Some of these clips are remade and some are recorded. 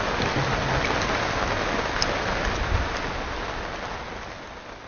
recorded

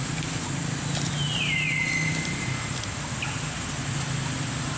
recorded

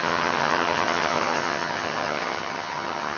remade